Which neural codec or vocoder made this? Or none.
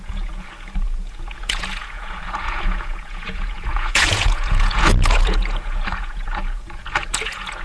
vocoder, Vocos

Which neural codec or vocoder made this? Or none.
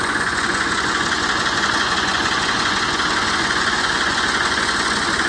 vocoder, Vocos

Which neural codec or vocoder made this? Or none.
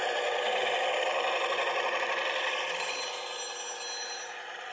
none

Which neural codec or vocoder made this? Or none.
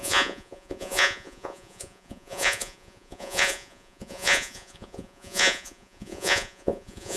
vocoder, Vocos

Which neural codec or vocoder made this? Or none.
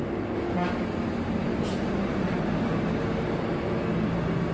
none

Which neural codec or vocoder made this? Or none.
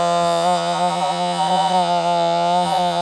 vocoder, Vocos